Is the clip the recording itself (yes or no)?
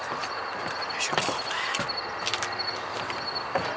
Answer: yes